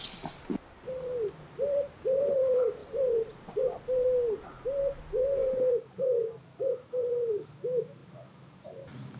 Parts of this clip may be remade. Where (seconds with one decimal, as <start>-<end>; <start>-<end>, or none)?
0.0-2.8; 6.6-9.2